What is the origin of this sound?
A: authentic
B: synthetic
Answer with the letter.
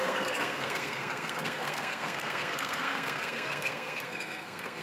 B